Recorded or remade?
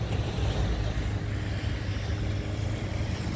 recorded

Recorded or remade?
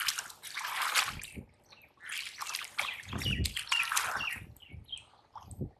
recorded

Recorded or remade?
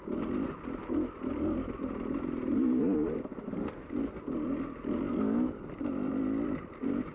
recorded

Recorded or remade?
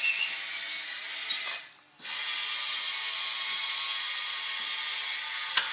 recorded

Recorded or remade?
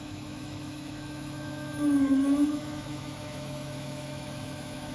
remade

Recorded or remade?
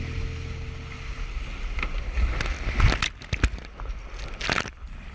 recorded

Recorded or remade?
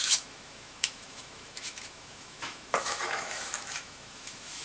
remade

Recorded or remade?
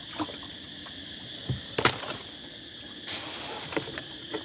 recorded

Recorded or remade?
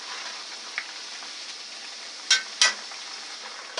recorded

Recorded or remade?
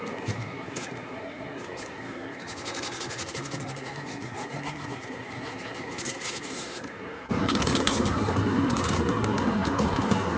remade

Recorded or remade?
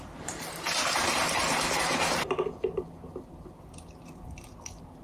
recorded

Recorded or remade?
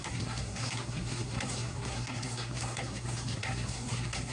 remade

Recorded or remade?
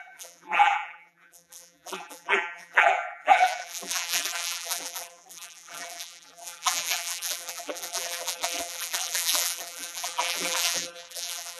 remade